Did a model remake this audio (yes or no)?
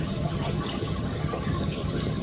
yes